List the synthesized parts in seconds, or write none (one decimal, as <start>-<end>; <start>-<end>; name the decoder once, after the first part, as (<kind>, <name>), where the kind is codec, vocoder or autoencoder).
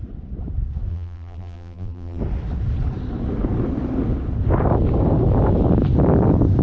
0.9-2.2 (vocoder, BigVGAN v2)